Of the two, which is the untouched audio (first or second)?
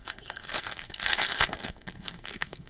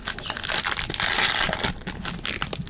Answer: second